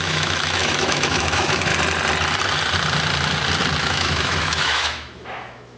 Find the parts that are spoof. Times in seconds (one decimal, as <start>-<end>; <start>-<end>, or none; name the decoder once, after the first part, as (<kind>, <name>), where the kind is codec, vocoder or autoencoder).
0.0-1.7 (autoencoder, DAC-VAE); 3.8-5.8

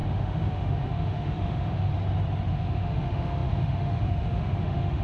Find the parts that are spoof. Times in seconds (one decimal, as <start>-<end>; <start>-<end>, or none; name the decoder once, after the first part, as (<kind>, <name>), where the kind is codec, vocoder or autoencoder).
0.0-1.9 (autoencoder, DAC-VAE); 2.5-5.0